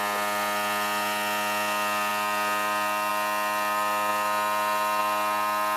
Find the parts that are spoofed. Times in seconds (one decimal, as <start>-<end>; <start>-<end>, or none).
none